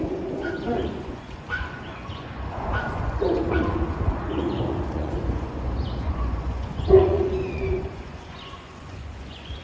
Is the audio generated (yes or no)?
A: yes